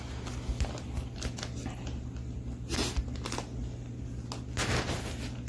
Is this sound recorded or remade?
recorded